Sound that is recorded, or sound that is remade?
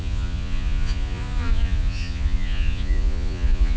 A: remade